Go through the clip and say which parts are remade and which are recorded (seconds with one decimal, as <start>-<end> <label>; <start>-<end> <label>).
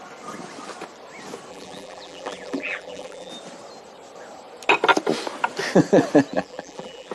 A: 0.0-1.5 recorded; 1.5-3.3 remade; 3.3-6.3 recorded; 6.3-7.1 remade